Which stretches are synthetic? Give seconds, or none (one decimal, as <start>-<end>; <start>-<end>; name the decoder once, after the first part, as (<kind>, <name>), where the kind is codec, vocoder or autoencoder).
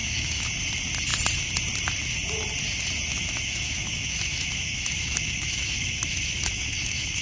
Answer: 0.0-0.5 (autoencoder, DAC-VAE); 3.1-7.2